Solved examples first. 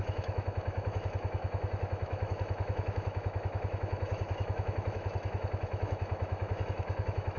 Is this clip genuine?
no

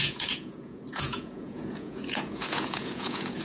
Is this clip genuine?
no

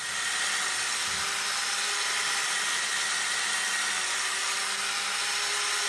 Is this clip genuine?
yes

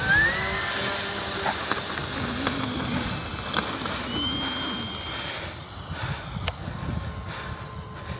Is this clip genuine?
yes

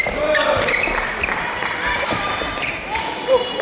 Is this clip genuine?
no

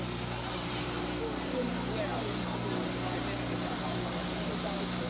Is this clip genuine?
yes